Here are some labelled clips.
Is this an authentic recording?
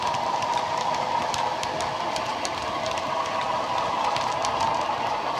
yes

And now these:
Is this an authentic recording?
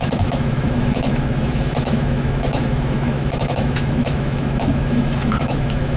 no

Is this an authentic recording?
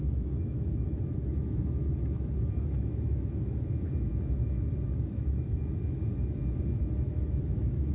no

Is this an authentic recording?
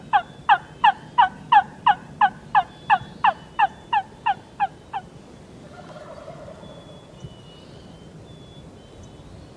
yes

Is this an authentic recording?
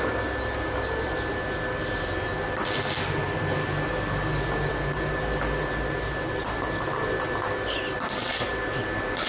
yes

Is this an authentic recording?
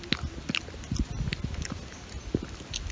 yes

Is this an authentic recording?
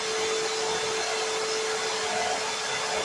yes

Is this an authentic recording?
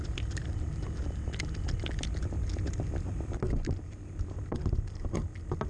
yes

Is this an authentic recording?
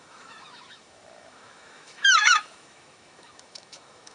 no